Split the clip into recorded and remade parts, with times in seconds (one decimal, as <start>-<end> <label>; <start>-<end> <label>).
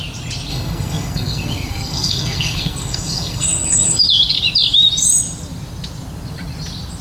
0.0-0.5 recorded; 0.5-4.0 remade; 4.0-7.0 recorded